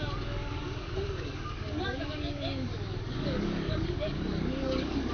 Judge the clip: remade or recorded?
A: remade